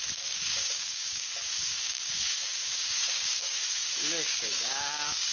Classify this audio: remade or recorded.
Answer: remade